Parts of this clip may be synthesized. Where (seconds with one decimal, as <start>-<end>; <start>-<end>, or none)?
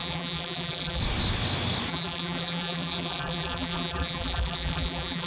0.0-1.0; 1.9-5.3